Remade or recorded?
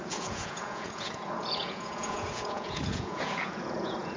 remade